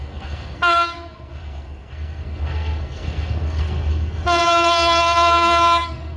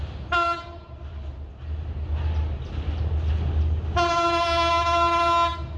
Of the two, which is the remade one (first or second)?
first